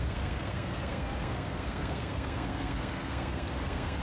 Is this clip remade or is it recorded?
remade